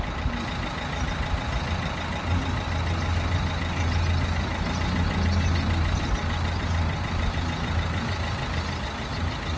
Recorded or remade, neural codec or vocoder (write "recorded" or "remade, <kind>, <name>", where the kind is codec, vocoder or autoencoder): recorded